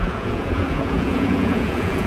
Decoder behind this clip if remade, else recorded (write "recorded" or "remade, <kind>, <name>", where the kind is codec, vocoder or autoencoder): remade, vocoder, Vocos